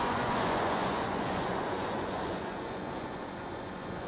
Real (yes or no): no